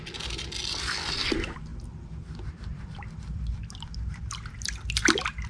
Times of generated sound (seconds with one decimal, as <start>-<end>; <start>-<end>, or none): none